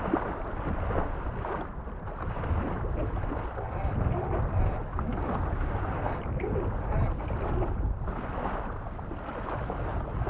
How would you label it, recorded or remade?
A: recorded